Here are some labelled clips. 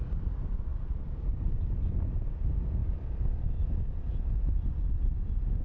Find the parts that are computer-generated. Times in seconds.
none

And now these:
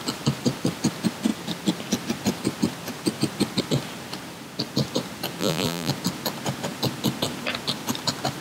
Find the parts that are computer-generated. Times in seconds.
5.4-5.9 (vocoder, BigVGAN v2)